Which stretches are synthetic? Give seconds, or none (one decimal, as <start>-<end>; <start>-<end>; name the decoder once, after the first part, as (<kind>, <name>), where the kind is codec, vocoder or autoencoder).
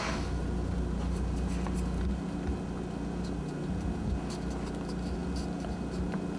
none